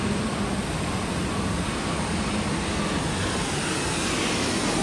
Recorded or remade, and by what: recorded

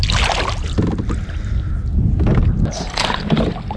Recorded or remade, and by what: recorded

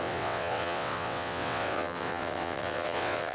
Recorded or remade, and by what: remade, vocoder, WaveNeXt